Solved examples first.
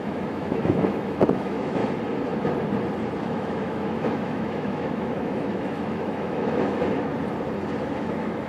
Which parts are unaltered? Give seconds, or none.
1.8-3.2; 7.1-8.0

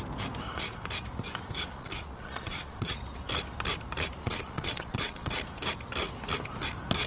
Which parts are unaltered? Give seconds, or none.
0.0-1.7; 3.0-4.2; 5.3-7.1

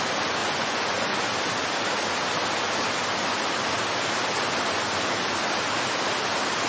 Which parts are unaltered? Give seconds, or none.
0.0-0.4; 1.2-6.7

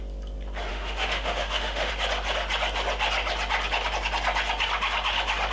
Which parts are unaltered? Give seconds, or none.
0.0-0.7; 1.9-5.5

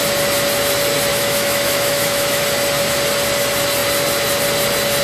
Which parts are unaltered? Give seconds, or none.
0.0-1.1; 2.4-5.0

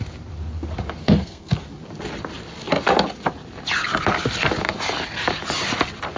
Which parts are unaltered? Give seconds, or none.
0.0-1.0; 1.5-6.2